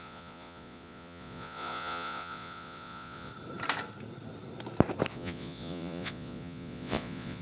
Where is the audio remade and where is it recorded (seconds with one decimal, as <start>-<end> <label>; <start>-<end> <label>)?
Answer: 0.0-3.3 remade; 3.3-5.1 recorded; 5.1-7.4 remade